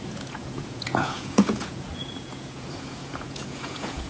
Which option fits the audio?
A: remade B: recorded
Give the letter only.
A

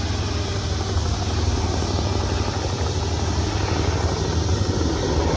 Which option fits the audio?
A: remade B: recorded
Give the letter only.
B